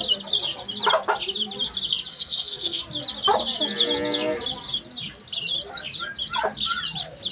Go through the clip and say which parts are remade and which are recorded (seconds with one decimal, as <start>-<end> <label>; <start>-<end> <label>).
0.0-2.1 recorded; 2.1-2.8 remade; 2.8-7.3 recorded